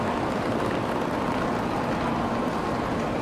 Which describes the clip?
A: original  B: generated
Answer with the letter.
A